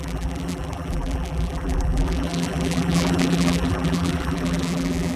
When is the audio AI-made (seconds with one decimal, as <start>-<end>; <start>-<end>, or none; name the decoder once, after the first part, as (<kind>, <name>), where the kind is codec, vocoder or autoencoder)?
0.0-5.2 (vocoder, BigVGAN v2)